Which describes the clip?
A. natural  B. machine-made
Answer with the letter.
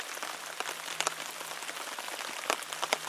A